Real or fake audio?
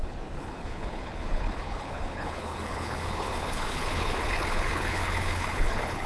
fake